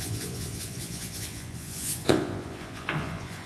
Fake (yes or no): yes